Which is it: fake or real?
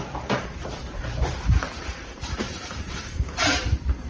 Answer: fake